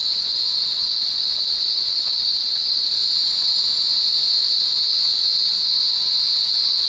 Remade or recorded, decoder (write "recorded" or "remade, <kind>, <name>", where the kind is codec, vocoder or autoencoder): remade, vocoder, Vocos